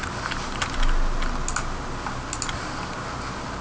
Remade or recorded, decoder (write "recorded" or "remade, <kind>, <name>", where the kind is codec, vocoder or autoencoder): recorded